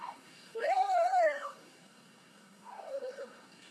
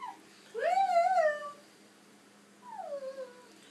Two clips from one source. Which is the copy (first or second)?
first